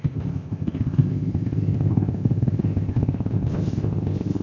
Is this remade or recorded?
remade